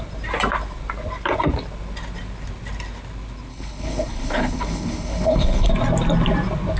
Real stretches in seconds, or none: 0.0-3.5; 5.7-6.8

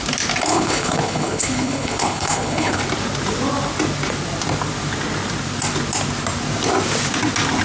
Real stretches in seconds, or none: 0.0-0.5; 2.8-7.6

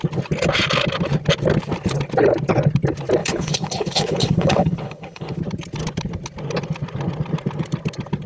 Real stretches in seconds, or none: 0.0-3.2; 5.4-8.3

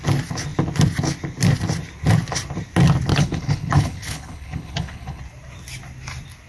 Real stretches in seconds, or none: 0.0-3.1; 5.2-6.5